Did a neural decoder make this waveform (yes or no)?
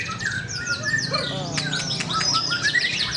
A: yes